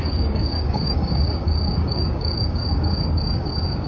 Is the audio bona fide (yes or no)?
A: no